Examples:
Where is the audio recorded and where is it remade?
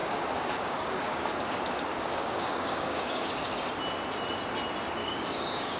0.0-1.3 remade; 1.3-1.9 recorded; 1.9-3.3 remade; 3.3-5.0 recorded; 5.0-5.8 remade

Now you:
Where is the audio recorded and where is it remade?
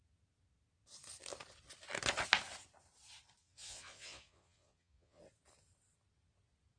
0.0-3.4 recorded; 3.4-5.2 remade; 5.2-6.8 recorded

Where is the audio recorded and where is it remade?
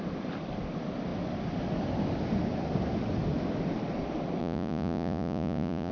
0.0-4.4 recorded; 4.4-5.9 remade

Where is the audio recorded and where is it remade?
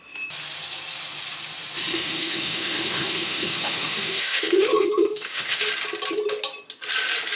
0.0-1.9 recorded; 1.9-5.7 remade; 5.7-7.4 recorded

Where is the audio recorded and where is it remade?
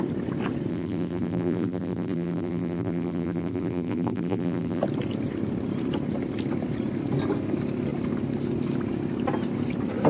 0.0-0.7 recorded; 0.7-4.8 remade; 4.8-10.1 recorded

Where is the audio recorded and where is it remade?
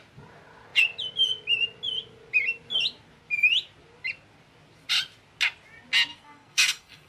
0.0-6.1 recorded; 6.1-7.1 remade